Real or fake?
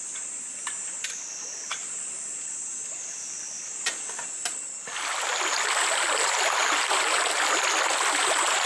real